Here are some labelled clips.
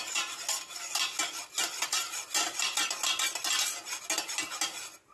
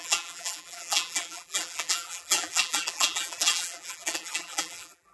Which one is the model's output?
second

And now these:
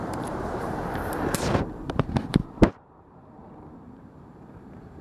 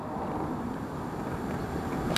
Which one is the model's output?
first